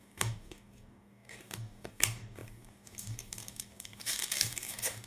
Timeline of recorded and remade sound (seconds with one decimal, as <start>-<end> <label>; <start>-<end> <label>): 0.0-5.1 remade